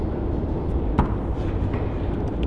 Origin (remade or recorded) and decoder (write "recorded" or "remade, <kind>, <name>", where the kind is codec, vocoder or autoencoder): recorded